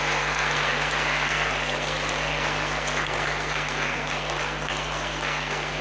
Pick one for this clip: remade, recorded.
remade